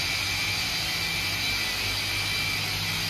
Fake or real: real